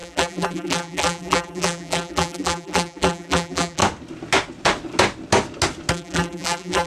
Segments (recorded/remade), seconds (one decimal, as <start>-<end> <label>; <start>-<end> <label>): 0.0-3.8 remade; 3.8-5.9 recorded; 5.9-6.9 remade